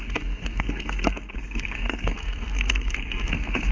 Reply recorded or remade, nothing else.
remade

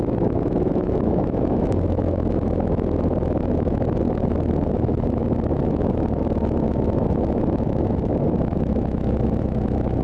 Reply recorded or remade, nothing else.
remade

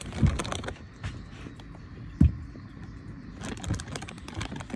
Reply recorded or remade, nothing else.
recorded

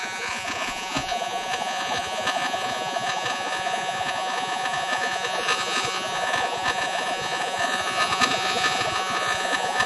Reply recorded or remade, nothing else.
remade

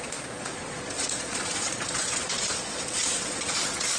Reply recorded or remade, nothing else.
remade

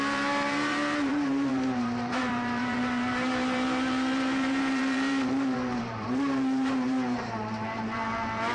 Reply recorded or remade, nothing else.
remade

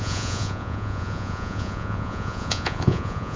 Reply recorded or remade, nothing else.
remade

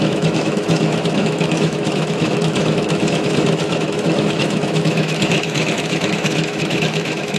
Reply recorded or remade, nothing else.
remade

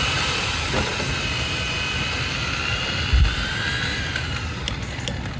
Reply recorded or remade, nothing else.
recorded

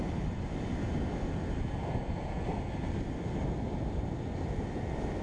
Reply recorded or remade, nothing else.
recorded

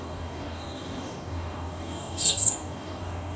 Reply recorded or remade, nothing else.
remade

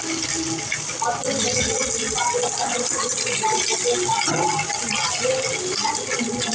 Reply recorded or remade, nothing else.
recorded